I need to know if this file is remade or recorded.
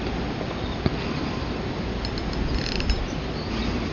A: recorded